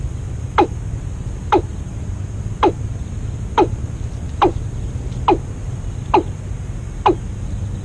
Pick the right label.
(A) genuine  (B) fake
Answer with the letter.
A